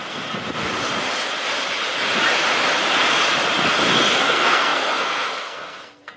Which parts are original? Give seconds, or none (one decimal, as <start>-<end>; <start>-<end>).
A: 0.4-4.1